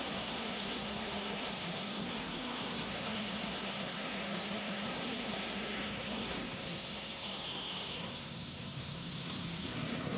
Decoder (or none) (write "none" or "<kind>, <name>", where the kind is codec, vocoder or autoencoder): codec, SNAC